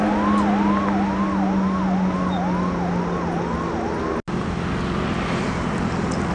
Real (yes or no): yes